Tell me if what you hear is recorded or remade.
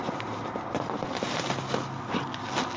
recorded